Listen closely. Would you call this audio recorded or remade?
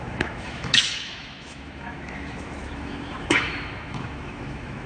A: remade